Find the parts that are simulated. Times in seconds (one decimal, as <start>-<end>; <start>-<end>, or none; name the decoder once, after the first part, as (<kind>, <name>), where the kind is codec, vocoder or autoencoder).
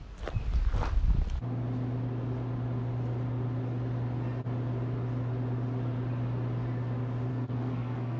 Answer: 7.3-8.2 (codec, SNAC)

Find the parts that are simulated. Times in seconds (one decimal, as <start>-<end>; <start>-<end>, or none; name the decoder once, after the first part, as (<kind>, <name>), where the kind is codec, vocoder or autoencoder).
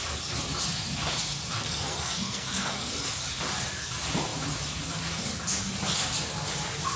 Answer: 1.5-2.9 (codec, SNAC)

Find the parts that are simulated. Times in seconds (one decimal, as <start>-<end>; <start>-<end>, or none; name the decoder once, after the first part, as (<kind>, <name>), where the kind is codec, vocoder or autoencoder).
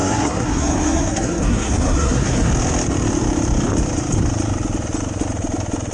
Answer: 0.0-2.5 (codec, SNAC)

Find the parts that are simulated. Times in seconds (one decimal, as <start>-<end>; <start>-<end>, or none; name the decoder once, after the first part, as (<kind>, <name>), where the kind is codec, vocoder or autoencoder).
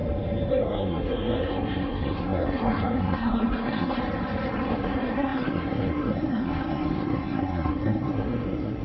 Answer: 0.5-4.0 (codec, SNAC); 4.7-8.8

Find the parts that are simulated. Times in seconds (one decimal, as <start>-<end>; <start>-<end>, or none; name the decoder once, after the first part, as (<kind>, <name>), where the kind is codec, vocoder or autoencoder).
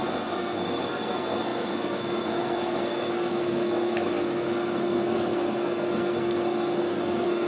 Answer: 0.0-7.5 (codec, SNAC)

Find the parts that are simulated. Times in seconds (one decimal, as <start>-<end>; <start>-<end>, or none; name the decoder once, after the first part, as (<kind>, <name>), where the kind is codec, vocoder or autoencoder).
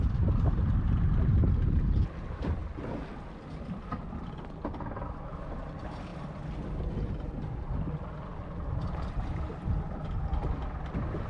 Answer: none